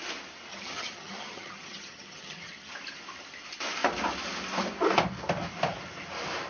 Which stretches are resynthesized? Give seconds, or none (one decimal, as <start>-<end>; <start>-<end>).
0.5-2.7